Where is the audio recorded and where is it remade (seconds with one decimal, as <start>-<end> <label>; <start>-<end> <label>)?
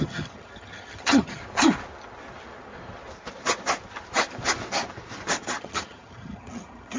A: 0.0-1.4 remade; 1.4-5.6 recorded; 5.6-7.0 remade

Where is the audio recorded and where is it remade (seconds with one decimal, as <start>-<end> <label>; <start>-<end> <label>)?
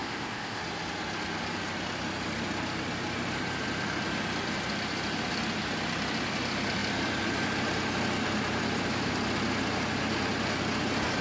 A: 0.0-0.6 remade; 0.6-11.2 recorded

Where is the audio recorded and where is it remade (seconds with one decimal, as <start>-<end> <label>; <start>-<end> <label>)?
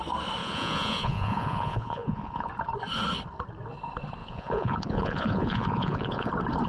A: 0.0-0.4 recorded; 0.4-2.5 remade; 2.5-4.2 recorded; 4.2-6.3 remade; 6.3-6.7 recorded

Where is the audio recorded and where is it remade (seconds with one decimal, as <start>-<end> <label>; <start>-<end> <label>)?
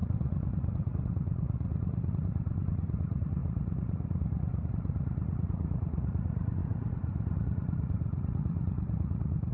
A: 0.0-9.5 remade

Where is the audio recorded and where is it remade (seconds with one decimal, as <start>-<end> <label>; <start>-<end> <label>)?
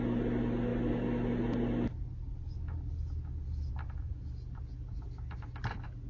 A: 0.0-6.1 recorded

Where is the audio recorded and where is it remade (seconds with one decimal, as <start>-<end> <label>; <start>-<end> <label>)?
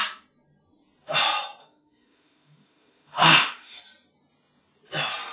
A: 0.0-1.6 recorded; 1.6-3.8 remade; 3.8-5.3 recorded